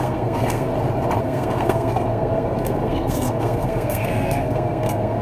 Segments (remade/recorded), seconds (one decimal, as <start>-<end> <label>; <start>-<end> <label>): 0.0-0.7 remade; 0.7-1.2 recorded; 1.2-5.2 remade